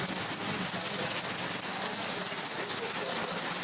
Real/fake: real